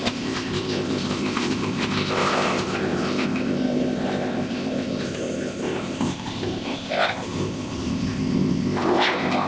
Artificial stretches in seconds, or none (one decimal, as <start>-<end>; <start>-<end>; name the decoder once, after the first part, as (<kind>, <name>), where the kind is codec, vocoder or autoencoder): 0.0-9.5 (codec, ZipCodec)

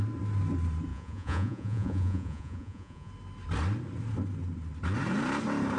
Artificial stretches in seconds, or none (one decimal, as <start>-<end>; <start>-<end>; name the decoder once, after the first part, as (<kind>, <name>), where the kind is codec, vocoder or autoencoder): 0.9-3.1 (vocoder, Vocos)

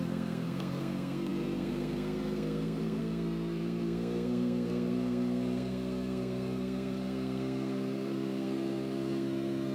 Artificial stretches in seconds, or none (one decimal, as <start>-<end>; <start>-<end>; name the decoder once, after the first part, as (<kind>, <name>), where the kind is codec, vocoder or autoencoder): 0.0-9.7 (codec, SNAC)